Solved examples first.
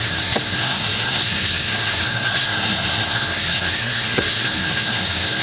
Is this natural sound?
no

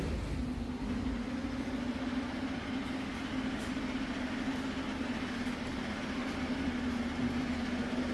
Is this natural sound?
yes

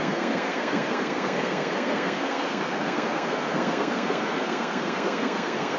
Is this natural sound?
no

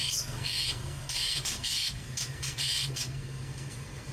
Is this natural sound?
no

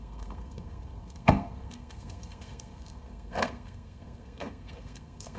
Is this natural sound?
no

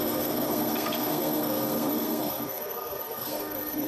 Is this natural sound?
no